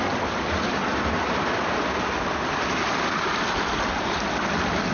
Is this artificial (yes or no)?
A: no